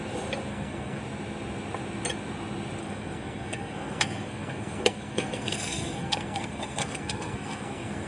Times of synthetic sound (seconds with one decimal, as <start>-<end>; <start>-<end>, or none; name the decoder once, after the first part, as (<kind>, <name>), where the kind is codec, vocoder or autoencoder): 0.5-1.0 (codec, SNAC); 2.8-8.1